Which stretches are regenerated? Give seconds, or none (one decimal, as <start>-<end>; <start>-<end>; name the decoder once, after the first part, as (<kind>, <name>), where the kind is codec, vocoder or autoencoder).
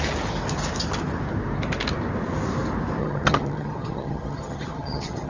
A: 3.0-5.3 (vocoder, HiFi-GAN)